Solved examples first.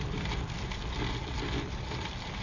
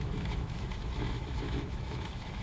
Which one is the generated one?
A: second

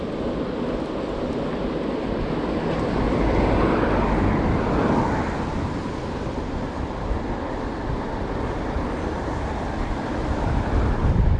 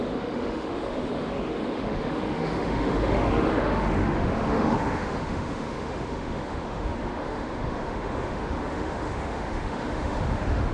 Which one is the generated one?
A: second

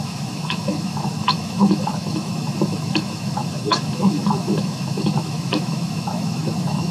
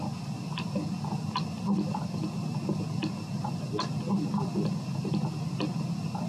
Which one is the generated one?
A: first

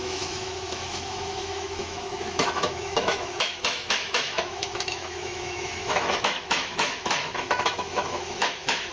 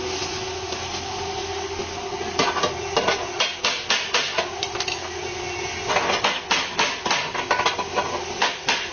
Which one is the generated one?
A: first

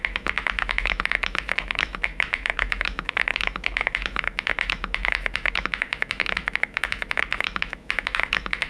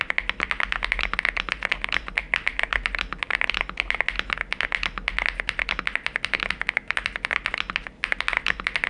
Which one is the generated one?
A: first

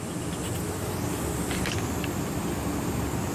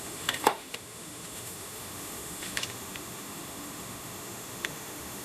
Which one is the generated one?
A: second